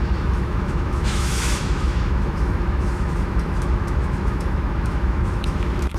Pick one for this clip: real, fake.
fake